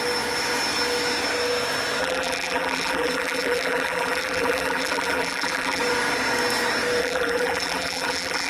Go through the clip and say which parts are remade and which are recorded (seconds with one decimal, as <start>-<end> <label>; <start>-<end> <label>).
0.0-2.0 recorded; 2.0-5.8 remade; 5.8-7.0 recorded; 7.0-8.5 remade